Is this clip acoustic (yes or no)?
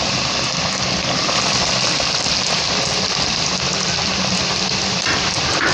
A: yes